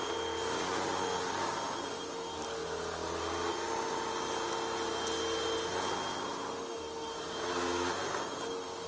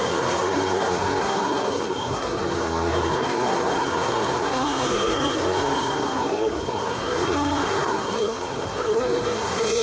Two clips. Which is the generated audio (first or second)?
second